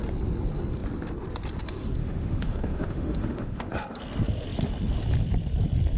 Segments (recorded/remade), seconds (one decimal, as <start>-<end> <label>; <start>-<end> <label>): 0.0-2.0 recorded; 2.0-3.7 remade; 3.7-6.0 recorded